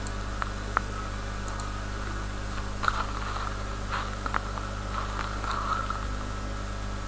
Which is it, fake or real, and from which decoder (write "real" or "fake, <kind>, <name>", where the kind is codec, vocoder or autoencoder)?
real